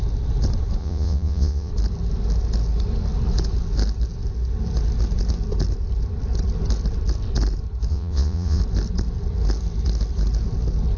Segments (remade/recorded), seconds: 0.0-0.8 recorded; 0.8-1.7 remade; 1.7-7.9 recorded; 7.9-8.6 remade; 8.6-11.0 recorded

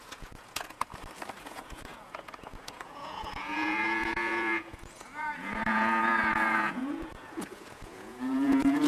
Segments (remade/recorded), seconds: 0.0-0.9 remade; 0.9-1.4 recorded; 1.4-8.9 remade

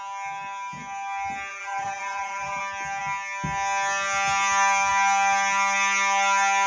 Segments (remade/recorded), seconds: 0.0-1.5 recorded; 1.5-2.6 remade; 2.6-6.7 recorded

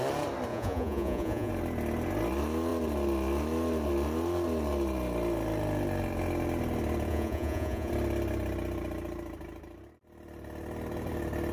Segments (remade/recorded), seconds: 0.0-0.5 recorded; 0.5-1.5 remade; 1.5-7.1 recorded; 7.1-7.9 remade; 7.9-11.5 recorded

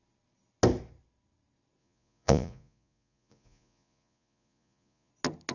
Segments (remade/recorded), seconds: 0.0-1.8 recorded; 1.8-5.1 remade; 5.1-5.5 recorded

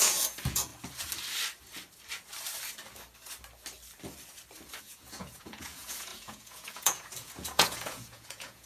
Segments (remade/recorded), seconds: 0.0-0.7 remade; 0.7-4.8 recorded; 4.8-8.7 remade

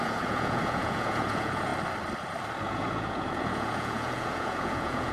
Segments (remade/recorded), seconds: 0.0-1.7 remade; 1.7-2.6 recorded; 2.6-5.1 remade